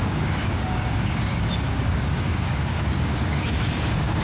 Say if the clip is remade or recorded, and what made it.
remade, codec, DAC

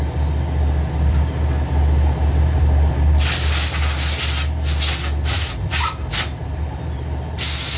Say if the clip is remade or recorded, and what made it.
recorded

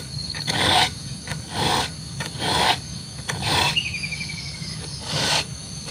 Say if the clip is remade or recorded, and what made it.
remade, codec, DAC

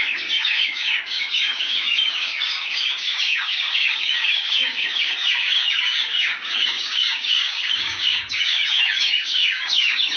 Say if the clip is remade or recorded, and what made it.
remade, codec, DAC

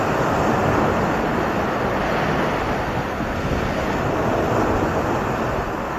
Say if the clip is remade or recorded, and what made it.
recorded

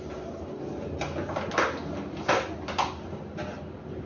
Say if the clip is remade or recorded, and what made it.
recorded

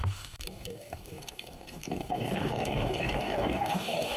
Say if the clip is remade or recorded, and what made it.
remade, codec, DAC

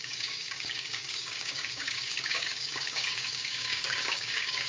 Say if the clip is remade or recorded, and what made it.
remade, codec, DAC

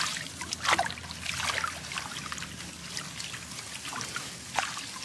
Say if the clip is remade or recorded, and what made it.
recorded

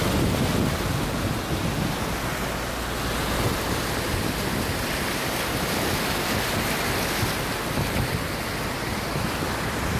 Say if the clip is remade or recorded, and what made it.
recorded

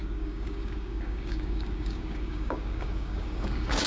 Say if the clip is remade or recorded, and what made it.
remade, codec, DAC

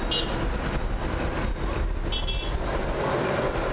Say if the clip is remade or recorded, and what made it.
recorded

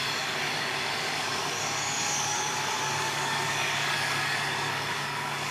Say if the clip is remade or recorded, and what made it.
remade, codec, DAC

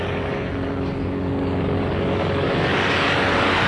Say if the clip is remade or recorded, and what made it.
remade, codec, DAC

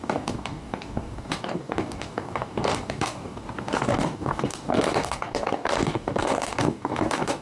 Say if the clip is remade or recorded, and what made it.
remade, codec, DAC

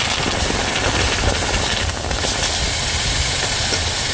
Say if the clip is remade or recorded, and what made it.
recorded